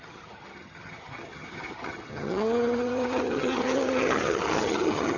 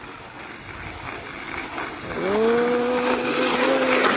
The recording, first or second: second